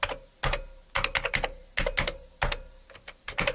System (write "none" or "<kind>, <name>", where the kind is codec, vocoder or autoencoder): none